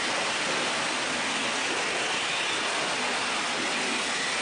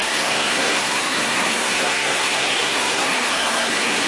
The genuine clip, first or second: first